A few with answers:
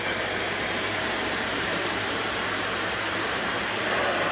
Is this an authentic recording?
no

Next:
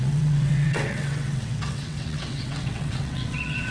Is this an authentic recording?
no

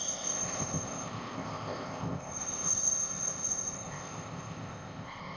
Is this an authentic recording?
no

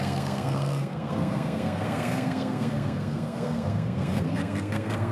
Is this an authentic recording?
no